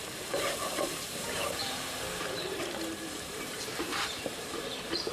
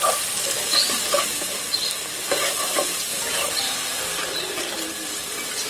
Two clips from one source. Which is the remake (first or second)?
first